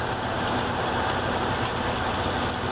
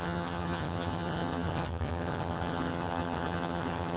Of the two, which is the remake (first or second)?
second